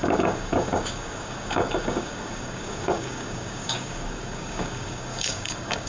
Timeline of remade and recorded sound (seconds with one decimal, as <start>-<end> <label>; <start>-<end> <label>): 0.0-5.9 remade